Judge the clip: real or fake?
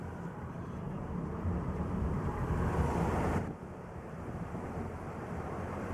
fake